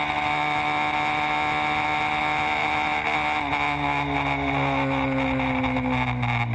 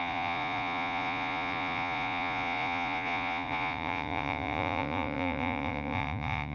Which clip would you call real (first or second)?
first